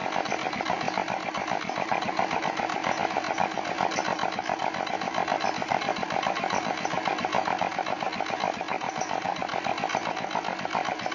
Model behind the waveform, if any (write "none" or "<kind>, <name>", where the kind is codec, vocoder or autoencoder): none